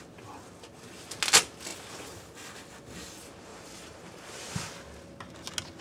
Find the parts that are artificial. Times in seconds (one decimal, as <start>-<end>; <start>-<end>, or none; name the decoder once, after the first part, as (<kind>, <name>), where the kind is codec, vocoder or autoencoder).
3.5-4.7 (vocoder, BigVGAN v2)